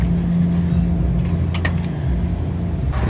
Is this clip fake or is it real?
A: real